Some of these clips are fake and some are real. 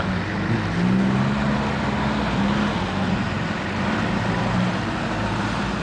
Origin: real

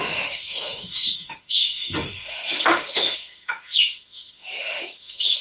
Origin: fake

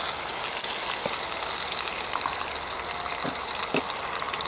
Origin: real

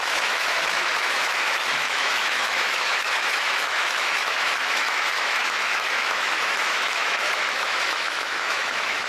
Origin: fake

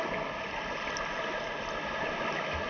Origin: real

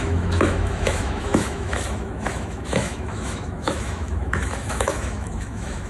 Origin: fake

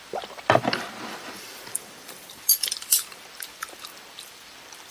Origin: fake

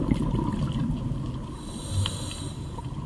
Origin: real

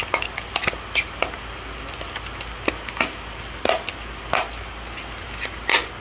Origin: real